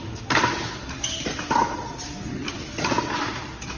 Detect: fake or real real